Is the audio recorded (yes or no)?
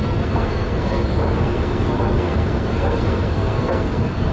no